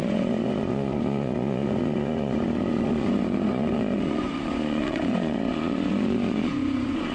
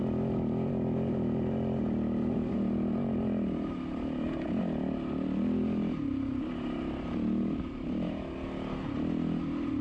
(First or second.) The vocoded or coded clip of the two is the first